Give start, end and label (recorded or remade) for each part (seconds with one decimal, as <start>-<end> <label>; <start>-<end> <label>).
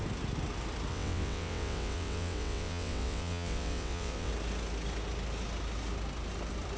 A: 0.0-0.9 recorded; 0.9-4.3 remade; 4.3-6.8 recorded